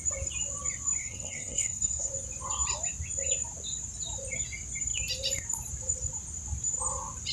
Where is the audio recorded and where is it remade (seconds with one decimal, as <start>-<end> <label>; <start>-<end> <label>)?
0.0-1.0 recorded; 1.0-2.1 remade; 2.1-7.3 recorded